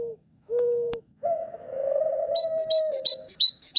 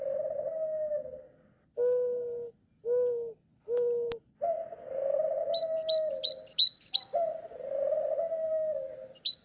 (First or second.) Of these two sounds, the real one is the second